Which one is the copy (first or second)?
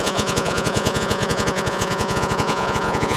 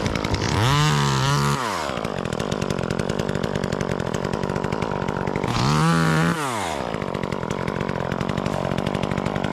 first